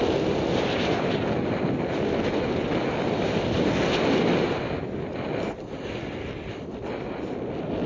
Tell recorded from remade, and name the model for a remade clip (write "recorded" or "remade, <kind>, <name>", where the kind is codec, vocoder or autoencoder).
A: recorded